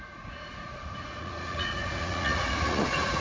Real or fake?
fake